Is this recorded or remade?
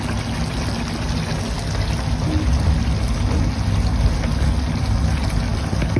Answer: recorded